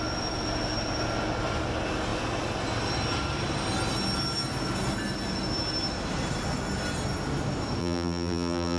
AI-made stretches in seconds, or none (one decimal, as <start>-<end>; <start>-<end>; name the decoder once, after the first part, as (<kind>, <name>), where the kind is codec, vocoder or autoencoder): 7.8-8.8 (vocoder, BigVGAN v2)